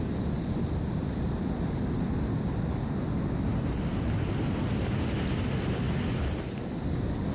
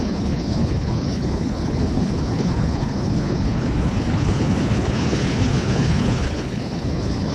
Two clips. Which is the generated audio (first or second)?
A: second